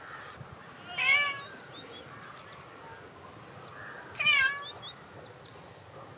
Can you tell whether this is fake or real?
real